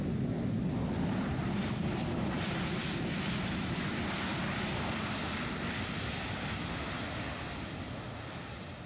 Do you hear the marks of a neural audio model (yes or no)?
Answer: no